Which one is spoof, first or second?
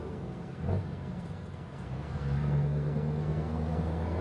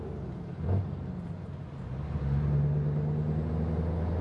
first